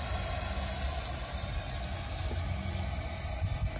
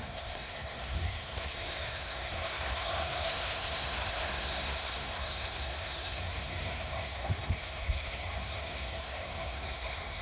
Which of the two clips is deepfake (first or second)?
second